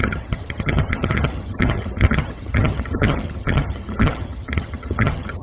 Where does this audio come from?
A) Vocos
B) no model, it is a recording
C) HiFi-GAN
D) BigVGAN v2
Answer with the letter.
C